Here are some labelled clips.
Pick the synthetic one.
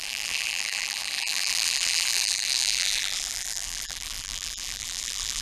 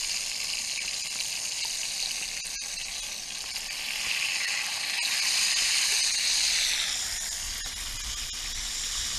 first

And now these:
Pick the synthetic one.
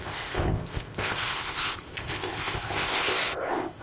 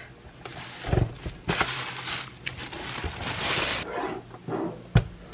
first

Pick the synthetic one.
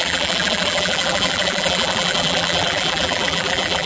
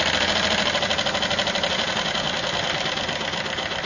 first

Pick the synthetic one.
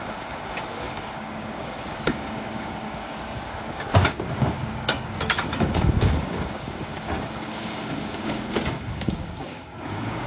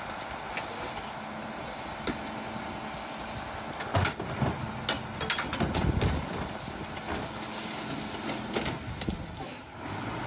first